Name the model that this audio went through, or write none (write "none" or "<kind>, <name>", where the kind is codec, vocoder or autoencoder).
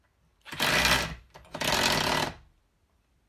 none